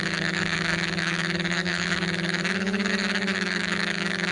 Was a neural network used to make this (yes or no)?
yes